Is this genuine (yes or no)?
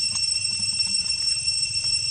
no